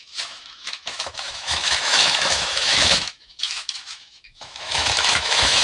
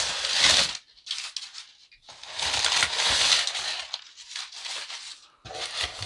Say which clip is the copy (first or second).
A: first